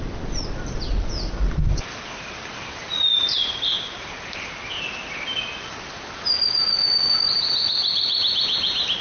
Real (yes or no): yes